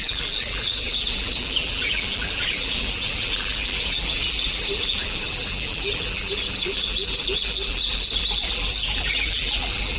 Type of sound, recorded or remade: remade